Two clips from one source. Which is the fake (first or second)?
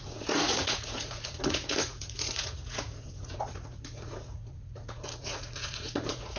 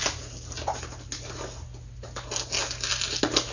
first